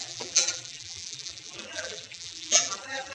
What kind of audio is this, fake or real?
fake